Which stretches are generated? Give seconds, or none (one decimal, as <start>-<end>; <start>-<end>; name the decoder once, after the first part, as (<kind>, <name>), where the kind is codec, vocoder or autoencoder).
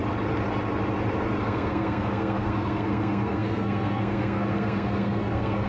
1.4-5.7 (codec, SNAC)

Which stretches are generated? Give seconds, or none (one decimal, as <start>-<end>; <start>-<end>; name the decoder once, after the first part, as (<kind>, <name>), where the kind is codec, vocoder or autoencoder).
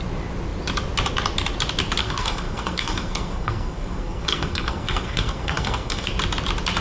2.0-6.1 (codec, SNAC)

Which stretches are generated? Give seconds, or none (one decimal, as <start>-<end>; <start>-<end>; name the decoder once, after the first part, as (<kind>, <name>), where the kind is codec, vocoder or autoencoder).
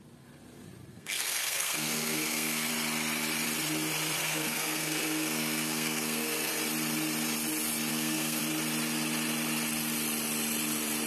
0.9-2.7 (codec, SNAC); 4.2-6.5; 7.9-8.4